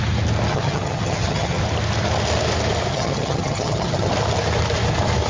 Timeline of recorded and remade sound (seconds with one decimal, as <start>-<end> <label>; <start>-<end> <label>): 0.0-0.5 recorded; 0.5-1.6 remade; 1.6-2.9 recorded; 2.9-4.1 remade; 4.1-5.3 recorded